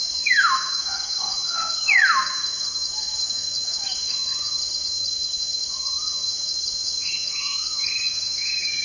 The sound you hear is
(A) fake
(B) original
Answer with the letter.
A